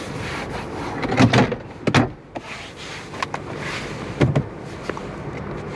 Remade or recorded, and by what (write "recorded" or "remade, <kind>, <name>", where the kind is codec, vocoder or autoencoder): recorded